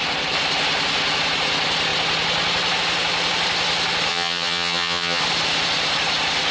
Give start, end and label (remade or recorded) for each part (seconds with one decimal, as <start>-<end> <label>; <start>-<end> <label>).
0.0-4.1 recorded; 4.1-5.2 remade; 5.2-6.5 recorded